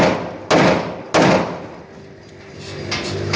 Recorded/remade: recorded